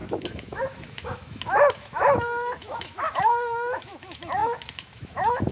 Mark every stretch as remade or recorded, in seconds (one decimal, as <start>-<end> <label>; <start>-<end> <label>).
0.0-5.5 remade